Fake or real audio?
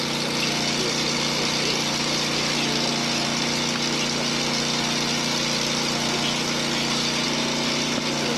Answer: real